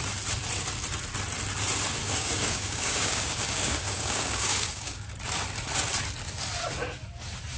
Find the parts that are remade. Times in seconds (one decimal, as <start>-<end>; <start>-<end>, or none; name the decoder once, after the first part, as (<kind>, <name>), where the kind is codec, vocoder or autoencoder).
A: 2.0-5.1 (codec, DAC)

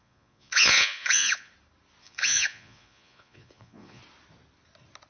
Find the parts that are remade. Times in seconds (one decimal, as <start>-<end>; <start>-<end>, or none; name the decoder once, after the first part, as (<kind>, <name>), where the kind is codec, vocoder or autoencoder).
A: 0.0-1.5 (vocoder, Vocos); 2.0-4.0

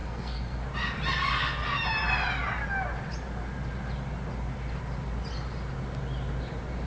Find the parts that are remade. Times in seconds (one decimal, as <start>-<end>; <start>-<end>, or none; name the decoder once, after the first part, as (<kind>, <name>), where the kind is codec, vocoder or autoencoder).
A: 0.0-0.6 (codec, SNAC)

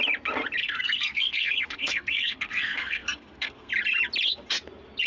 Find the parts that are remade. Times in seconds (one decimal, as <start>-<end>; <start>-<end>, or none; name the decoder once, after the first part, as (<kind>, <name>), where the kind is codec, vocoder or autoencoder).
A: 0.6-3.7 (codec, SNAC)